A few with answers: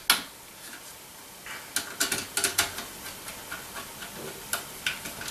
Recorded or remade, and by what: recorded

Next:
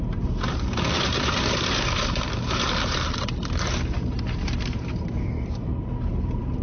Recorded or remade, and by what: remade, vocoder, BigVGAN v2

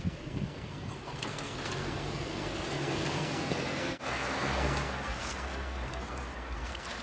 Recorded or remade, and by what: remade, codec, SNAC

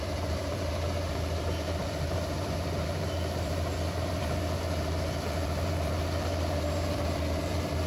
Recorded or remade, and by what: remade, vocoder, BigVGAN v2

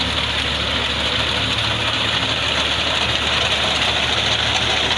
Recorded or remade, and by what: recorded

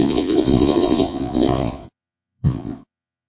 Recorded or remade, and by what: remade, vocoder, Vocos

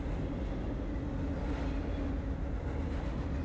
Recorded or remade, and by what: recorded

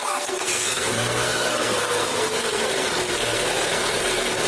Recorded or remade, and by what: remade, codec, SNAC